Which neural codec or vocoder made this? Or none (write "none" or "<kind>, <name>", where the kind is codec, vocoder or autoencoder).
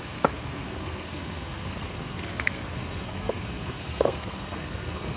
codec, SNAC